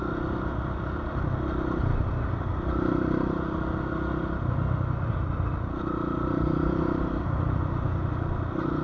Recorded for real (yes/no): yes